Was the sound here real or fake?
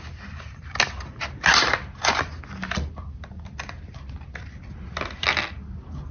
real